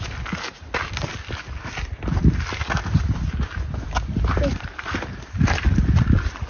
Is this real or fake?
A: real